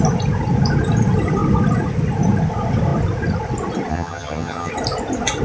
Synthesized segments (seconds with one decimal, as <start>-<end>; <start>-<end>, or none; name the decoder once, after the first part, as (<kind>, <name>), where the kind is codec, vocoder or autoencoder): 3.9-4.7 (vocoder, HiFi-GAN)